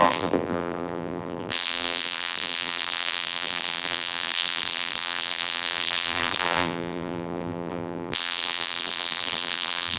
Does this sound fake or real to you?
fake